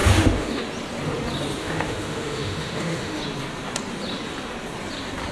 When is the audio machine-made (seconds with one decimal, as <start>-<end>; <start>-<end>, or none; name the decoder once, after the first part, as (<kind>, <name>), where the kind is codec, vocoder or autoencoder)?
0.0-0.6 (autoencoder, DAC-VAE); 1.6-3.2